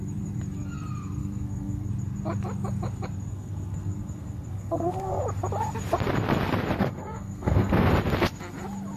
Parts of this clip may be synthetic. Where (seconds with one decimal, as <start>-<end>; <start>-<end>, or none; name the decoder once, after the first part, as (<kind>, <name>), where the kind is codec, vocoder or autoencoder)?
1.2-1.9 (codec, SNAC); 3.3-5.2; 6.8-7.9

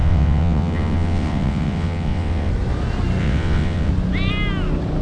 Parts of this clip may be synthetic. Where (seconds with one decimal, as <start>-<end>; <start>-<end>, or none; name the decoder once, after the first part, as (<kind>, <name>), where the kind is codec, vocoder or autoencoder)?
0.0-2.5 (vocoder, WaveNeXt); 3.2-3.9

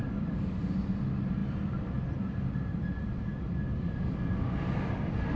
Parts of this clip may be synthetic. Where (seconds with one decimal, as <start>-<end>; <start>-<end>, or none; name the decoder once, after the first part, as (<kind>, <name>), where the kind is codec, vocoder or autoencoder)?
0.0-0.6 (vocoder, BigVGAN v2)

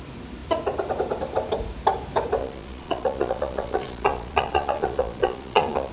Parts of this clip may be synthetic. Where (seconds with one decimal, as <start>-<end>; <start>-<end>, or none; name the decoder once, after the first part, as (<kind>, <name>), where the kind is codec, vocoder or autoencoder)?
2.4-5.9 (vocoder, Vocos)

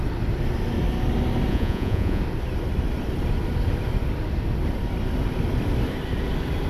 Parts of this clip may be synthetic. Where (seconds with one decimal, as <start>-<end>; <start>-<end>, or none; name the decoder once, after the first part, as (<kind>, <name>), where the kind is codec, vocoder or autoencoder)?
1.5-2.2 (vocoder, Vocos)

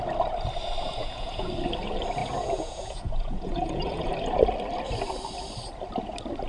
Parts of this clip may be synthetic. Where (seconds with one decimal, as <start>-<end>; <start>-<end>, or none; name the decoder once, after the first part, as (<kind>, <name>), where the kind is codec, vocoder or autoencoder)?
1.0-1.5 (vocoder, Vocos); 2.2-4.1

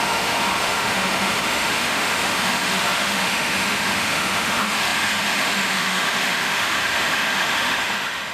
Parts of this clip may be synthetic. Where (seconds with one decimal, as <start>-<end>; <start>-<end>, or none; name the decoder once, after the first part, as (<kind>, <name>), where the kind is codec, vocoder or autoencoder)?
0.0-8.3 (autoencoder, DAC-VAE)

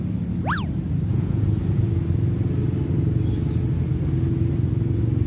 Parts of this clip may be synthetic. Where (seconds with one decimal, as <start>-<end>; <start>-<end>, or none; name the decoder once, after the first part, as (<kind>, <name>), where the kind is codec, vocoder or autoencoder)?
1.1-1.8 (vocoder, Vocos)